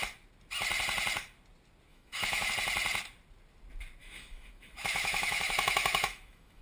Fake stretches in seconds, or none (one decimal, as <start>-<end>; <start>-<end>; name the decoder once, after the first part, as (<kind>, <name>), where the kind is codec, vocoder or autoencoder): 1.9-2.5 (autoencoder, DAC-VAE); 4.0-6.6